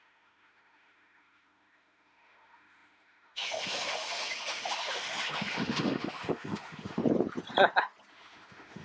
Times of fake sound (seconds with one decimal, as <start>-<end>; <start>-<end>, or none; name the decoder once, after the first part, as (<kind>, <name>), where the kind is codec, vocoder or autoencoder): 0.0-7.0 (autoencoder, DAC-VAE); 8.1-8.8

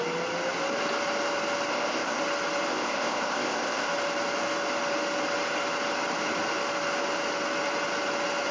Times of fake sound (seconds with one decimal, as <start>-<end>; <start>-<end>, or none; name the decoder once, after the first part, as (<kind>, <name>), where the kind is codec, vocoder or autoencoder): 1.7-2.2 (codec, ZipCodec); 2.7-3.9

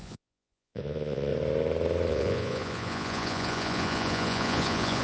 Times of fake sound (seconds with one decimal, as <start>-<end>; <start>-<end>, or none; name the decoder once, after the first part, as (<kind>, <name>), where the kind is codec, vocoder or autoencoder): 0.0-1.3 (vocoder, Vocos); 2.1-5.0

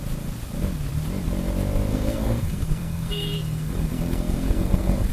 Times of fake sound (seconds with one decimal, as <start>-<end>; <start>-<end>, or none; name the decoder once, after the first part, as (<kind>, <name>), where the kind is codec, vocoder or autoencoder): 1.9-5.1 (codec, SNAC)

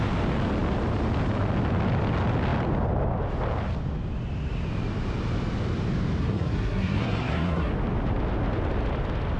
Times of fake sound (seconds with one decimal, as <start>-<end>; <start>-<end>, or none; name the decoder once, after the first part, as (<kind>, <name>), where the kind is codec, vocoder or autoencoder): 6.2-7.7 (codec, SNAC)

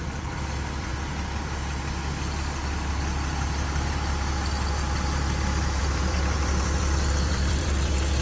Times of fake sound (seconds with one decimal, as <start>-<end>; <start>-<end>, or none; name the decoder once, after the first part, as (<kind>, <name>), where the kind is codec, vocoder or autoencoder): 0.0-0.9 (vocoder, BigVGAN v2); 5.8-8.2